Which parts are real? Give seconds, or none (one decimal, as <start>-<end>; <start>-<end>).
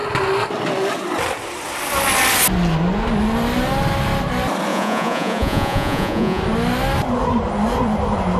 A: 0.0-4.7; 6.4-8.4